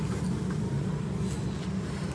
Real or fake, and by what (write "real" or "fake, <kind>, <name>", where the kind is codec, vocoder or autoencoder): real